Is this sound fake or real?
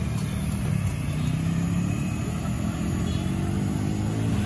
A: real